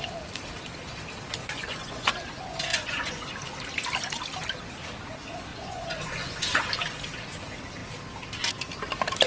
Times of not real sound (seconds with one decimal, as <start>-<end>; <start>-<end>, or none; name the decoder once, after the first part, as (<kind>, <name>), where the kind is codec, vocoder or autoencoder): 1.4-2.1 (vocoder, Vocos); 2.7-3.3; 5.5-6.6